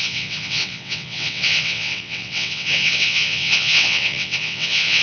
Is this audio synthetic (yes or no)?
yes